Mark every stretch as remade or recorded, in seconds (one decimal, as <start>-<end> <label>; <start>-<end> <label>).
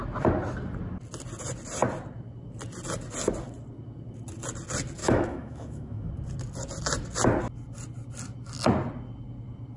0.0-5.0 recorded; 5.0-6.1 remade; 6.1-9.8 recorded